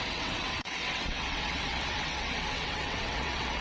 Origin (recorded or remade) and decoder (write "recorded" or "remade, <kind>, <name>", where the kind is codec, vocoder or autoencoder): remade, vocoder, WaveNeXt